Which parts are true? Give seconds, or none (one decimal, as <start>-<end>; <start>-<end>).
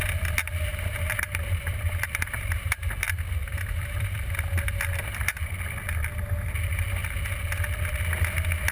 0.0-0.7; 2.9-3.4; 4.4-8.7